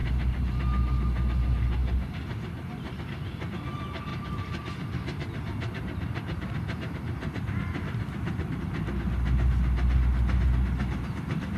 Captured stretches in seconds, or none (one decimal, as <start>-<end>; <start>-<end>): 0.6-4.1; 8.6-11.6